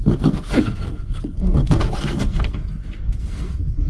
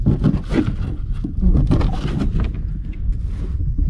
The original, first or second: second